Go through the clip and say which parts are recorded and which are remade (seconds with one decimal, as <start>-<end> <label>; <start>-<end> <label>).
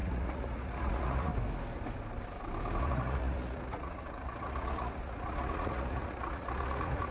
0.0-1.3 remade; 1.3-2.8 recorded; 2.8-7.1 remade